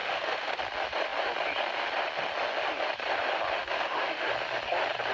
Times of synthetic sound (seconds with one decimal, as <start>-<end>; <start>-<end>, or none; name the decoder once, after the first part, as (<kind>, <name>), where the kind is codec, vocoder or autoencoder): 0.0-0.6 (autoencoder, DAC-VAE); 3.6-4.3